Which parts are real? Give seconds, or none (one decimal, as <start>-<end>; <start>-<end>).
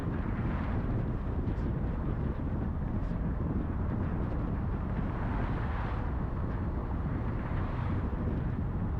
2.2-3.0; 3.8-6.8; 7.9-9.0